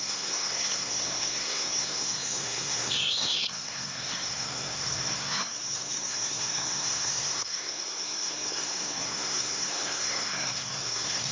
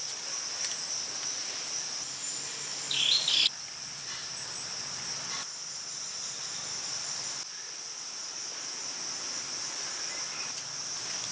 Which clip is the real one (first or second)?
second